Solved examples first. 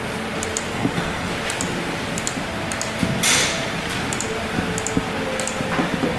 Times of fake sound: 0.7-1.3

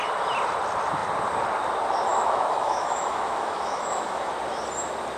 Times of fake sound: 2.1-4.3

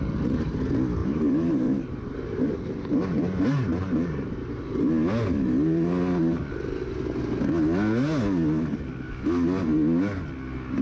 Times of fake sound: 1.0-4.6

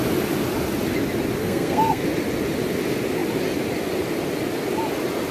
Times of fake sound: 1.4-2.0

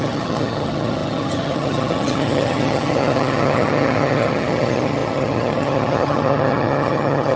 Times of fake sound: 0.0-7.4

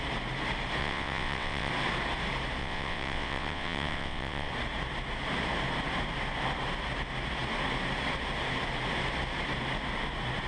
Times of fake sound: 0.8-1.7; 2.6-4.5

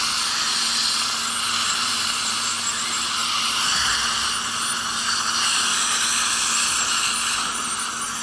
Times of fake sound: none

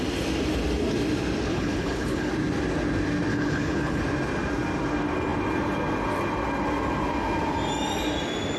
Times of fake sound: 1.5-2.3; 3.3-4.0